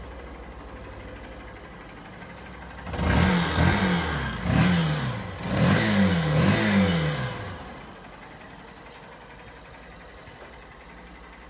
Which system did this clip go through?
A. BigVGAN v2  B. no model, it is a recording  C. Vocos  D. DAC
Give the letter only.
B